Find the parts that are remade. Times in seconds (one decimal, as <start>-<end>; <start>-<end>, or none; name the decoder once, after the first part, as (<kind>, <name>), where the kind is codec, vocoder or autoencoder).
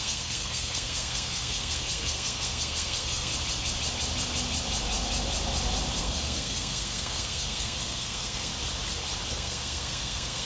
0.0-3.3 (codec, SNAC); 6.0-8.5; 9.3-10.4